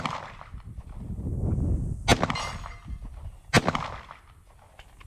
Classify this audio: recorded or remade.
recorded